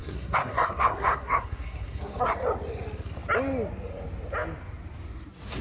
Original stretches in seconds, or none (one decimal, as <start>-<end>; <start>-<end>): 2.3-5.6